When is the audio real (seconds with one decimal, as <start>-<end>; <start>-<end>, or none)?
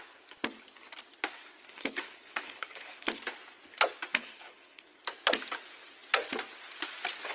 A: 0.0-1.7; 3.2-4.2; 5.0-7.3